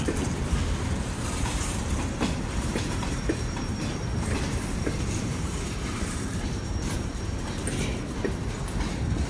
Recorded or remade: remade